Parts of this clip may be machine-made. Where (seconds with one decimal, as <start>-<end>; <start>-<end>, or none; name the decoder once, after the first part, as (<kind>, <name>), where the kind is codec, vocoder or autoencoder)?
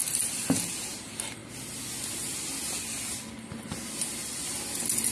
none